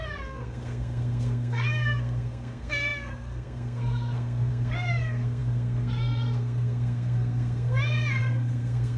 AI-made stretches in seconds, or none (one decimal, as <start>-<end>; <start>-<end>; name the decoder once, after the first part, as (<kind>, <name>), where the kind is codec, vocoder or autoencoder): 0.0-9.0 (codec, SNAC)